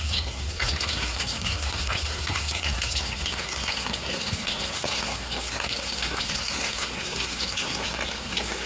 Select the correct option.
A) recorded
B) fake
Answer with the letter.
B